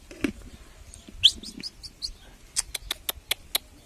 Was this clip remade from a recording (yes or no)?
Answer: no